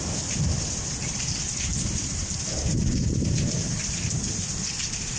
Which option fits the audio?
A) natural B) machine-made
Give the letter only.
B